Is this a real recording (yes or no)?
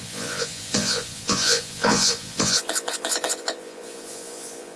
no